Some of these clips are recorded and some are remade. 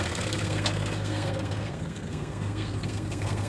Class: remade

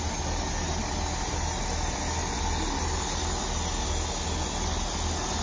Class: recorded